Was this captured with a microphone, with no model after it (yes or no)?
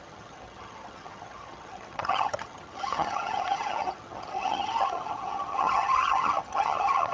no